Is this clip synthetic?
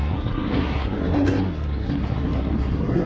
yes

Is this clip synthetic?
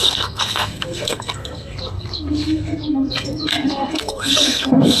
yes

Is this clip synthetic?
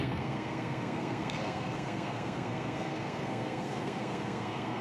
yes